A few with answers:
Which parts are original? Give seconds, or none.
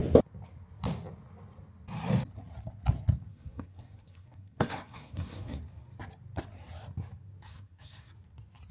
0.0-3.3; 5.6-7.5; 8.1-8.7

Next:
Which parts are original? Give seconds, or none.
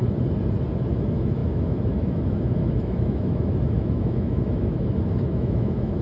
0.0-0.9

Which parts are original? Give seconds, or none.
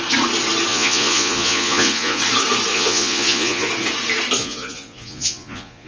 0.0-0.7; 2.2-2.7; 3.7-4.4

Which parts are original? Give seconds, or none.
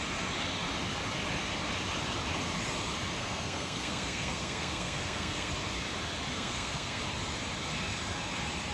0.0-3.2; 5.5-6.3; 7.0-8.7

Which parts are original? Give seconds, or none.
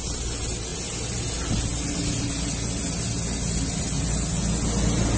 0.0-5.2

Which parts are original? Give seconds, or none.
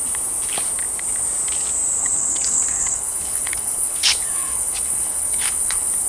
0.0-2.0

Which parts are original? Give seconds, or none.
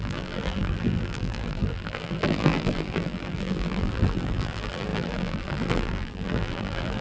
none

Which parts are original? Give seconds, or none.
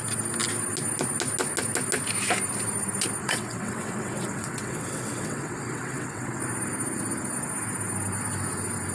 0.0-3.2; 6.4-8.9